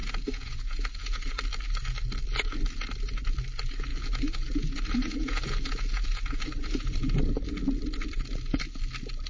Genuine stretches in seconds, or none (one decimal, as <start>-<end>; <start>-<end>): 1.4-3.9; 7.2-9.3